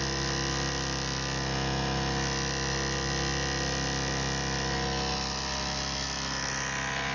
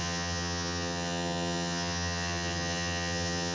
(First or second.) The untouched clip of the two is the first